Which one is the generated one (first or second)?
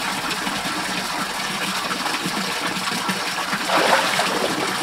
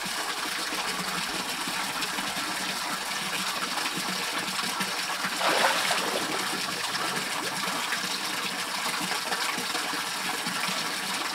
first